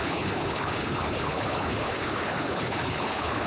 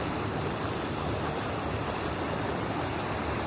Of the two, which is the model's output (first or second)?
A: first